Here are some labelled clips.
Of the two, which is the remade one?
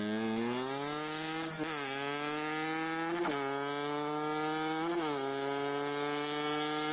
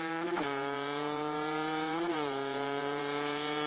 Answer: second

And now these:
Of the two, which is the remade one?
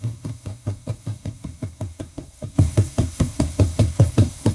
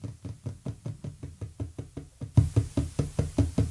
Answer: first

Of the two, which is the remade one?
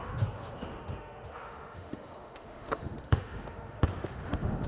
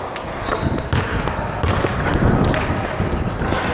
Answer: first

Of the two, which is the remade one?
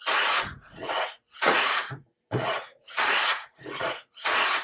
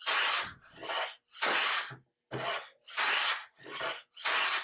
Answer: first